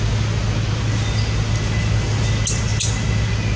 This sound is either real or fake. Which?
real